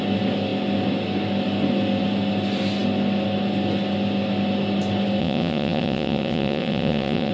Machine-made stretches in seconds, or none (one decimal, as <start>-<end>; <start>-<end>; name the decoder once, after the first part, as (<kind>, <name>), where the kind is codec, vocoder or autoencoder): 5.2-7.3 (vocoder, WaveNeXt)